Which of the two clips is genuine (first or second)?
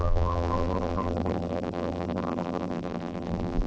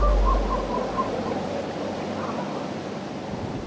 second